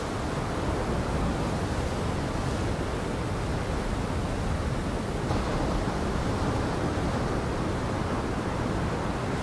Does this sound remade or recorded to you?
recorded